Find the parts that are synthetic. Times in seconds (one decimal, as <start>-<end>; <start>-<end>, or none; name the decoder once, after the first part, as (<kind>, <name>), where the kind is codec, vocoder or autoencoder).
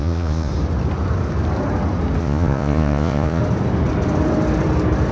0.0-0.5 (vocoder, Vocos); 2.2-3.4